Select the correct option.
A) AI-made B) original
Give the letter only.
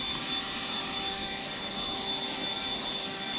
B